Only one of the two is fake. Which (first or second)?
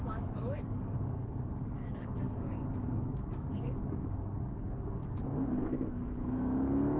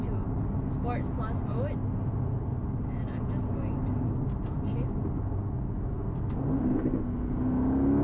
first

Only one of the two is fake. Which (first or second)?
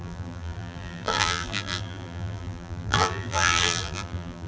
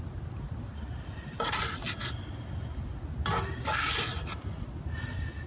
first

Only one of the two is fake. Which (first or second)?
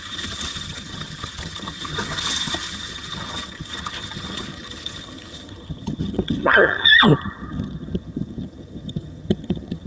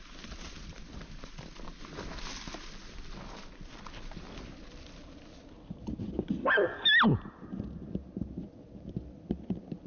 first